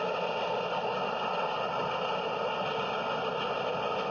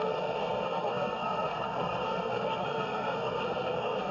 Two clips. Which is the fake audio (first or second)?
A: second